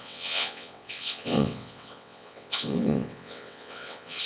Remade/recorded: remade